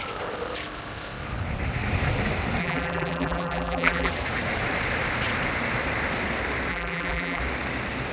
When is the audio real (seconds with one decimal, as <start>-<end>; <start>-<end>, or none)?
0.0-2.6; 4.1-6.7; 7.4-8.1